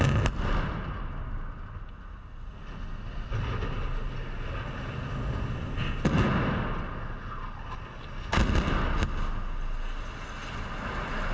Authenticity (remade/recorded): recorded